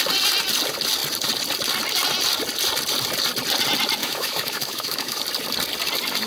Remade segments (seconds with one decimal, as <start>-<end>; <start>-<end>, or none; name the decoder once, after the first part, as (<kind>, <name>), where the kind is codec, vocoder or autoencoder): 4.0-5.2 (autoencoder, DAC-VAE)